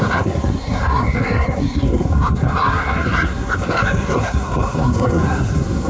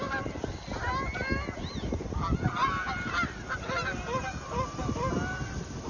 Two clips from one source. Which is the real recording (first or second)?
second